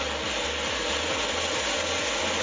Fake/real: real